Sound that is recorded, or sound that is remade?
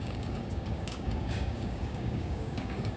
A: remade